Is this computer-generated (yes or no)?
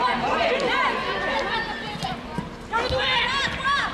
yes